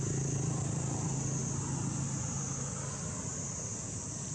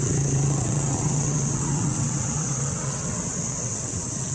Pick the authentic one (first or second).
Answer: first